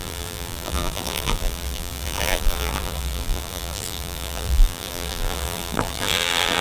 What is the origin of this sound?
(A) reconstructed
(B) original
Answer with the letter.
A